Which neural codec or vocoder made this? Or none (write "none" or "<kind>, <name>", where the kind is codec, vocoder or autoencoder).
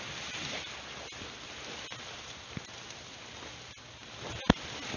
none